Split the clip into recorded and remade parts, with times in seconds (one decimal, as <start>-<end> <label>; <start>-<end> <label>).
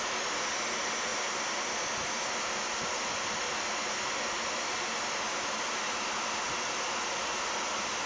0.0-8.1 recorded